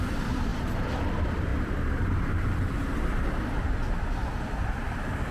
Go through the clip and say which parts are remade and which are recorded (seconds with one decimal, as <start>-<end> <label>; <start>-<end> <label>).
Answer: 0.0-0.5 remade; 0.5-1.1 recorded; 1.1-5.3 remade